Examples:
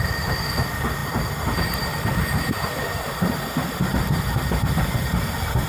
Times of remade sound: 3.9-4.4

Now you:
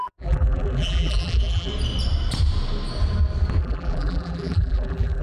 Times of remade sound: 0.0-1.7; 3.6-5.2

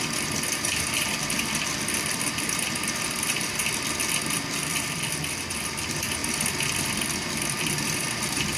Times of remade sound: 0.0-3.6; 4.6-8.6